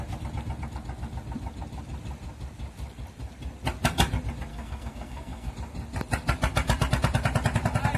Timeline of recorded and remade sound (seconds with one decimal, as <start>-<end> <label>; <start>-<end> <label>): 0.0-4.5 recorded; 4.5-5.5 remade; 5.5-8.0 recorded